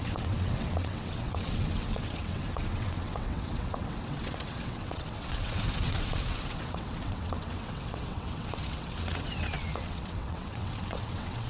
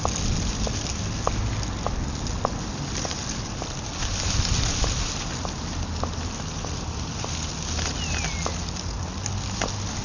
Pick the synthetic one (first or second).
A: first